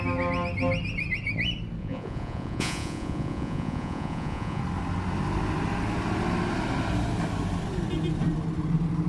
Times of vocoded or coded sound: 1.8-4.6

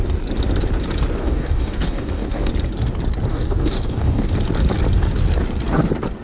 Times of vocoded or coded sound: 1.2-2.5; 3.3-4.3

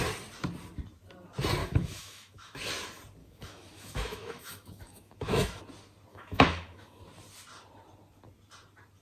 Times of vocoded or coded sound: 1.6-2.6; 3.2-5.6; 6.1-7.0